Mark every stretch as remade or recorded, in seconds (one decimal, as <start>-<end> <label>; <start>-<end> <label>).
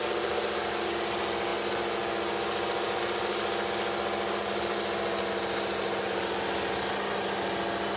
0.0-8.0 recorded